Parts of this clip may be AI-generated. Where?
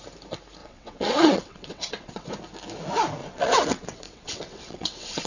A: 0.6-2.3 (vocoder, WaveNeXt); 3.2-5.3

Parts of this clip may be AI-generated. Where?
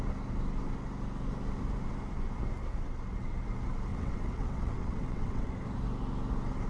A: 3.9-5.5 (vocoder, WaveNeXt)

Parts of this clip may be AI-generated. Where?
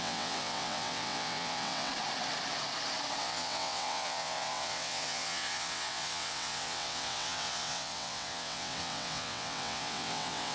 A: 0.0-1.9 (vocoder, WaveNeXt); 3.2-10.5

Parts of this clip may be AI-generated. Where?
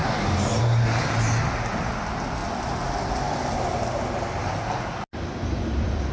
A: none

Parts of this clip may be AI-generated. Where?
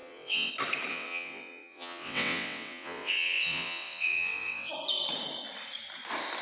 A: 0.0-0.5 (vocoder, WaveNeXt); 0.9-4.7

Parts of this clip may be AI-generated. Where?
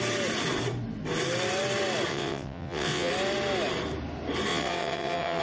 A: 2.1-3.1 (vocoder, WaveNeXt); 4.5-5.4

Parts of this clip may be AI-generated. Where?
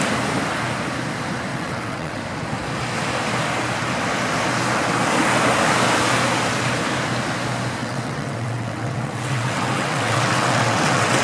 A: 1.5-2.2 (vocoder, WaveNeXt); 7.8-11.2